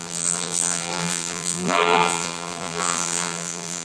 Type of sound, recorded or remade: remade